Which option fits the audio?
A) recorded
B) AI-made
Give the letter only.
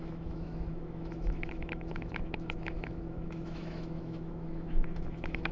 B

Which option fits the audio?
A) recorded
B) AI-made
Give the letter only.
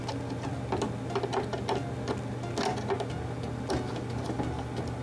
A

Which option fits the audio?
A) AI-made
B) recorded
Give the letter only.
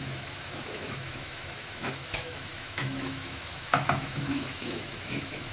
A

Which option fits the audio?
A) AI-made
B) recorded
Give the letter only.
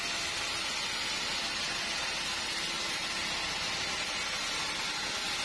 B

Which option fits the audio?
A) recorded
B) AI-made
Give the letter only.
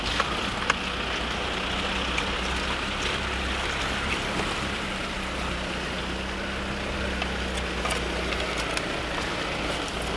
A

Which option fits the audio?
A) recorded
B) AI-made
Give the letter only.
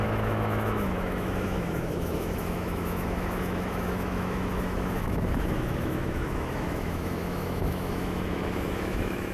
B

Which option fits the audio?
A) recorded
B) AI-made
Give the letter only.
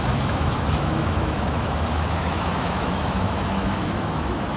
B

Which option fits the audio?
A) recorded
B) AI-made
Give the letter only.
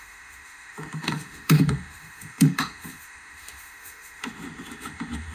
B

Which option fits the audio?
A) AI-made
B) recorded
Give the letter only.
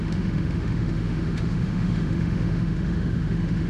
A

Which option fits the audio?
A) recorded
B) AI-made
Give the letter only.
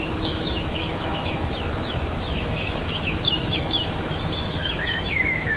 B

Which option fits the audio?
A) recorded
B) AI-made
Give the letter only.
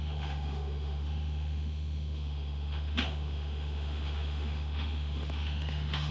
B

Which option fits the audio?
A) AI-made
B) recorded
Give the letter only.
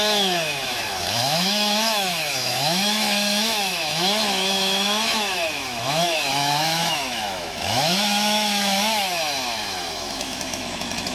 A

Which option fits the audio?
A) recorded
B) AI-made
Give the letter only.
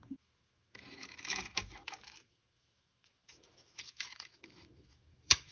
B